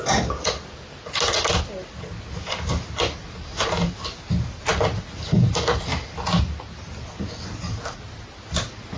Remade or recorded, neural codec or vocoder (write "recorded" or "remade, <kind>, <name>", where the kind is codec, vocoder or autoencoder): recorded